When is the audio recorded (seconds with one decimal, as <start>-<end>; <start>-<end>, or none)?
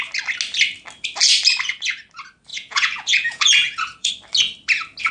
0.0-2.5; 4.1-5.1